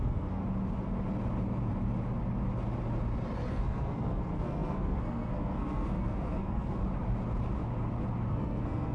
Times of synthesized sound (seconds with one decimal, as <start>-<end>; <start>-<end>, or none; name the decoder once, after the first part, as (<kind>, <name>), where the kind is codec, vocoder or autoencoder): 0.0-0.4 (codec, SNAC); 3.5-6.8; 8.3-8.9